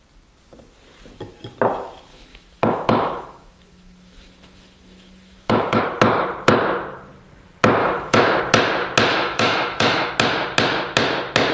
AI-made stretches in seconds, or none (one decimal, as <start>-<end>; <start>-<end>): 2.1-5.8; 7.8-8.4; 9.1-10.1